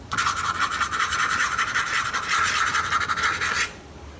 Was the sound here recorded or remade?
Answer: recorded